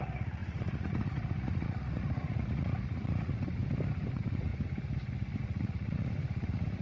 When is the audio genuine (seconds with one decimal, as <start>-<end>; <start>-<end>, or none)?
3.6-4.1; 4.5-5.4